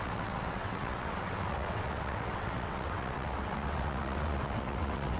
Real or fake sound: fake